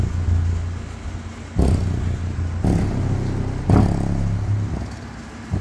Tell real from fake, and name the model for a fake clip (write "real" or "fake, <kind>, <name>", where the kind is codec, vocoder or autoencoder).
real